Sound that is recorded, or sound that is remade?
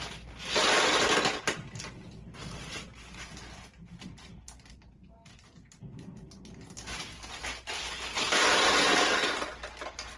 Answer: recorded